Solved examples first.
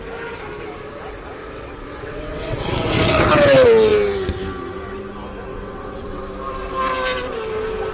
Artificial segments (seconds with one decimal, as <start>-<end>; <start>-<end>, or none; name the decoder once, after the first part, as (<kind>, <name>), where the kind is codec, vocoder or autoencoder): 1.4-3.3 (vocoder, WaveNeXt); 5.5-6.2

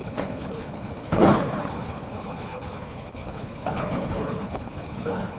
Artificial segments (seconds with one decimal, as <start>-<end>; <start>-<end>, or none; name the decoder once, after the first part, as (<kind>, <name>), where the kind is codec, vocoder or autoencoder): 0.0-5.4 (codec, HILCodec)

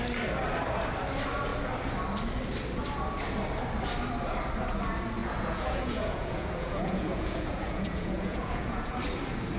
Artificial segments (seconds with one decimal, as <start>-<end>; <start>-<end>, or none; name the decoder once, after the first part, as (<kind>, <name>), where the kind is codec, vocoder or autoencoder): 5.2-9.0 (vocoder, Vocos)